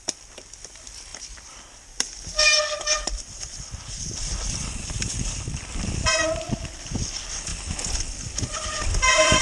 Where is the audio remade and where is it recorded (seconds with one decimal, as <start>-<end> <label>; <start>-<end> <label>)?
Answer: 0.0-9.4 remade